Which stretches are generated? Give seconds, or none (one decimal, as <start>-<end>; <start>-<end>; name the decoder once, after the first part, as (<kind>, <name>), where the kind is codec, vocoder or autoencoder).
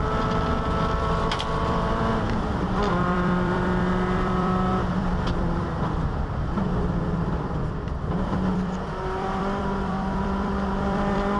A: 0.8-11.4 (vocoder, BigVGAN v2)